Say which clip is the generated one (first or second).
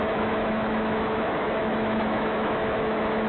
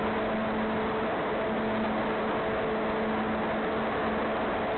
first